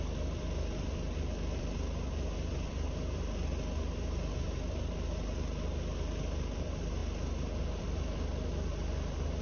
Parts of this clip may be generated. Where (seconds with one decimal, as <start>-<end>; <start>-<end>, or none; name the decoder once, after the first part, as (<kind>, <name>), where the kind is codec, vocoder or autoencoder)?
0.0-7.0 (vocoder, BigVGAN v2); 7.6-9.4